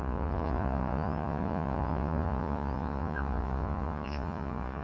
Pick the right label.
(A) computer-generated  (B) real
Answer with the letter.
A